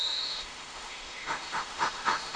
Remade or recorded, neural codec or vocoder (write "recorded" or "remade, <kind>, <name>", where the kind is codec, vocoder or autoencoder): remade, autoencoder, DAC-VAE